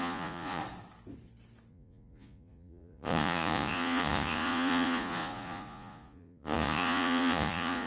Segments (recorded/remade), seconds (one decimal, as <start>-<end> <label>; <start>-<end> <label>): 0.0-0.6 remade; 0.6-1.7 recorded; 1.7-7.9 remade